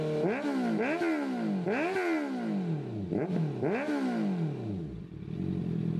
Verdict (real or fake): real